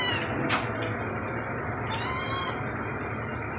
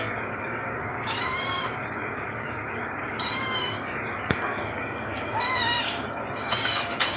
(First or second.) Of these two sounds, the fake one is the second